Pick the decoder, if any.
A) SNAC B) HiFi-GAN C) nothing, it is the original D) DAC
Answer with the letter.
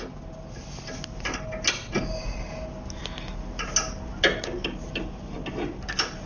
C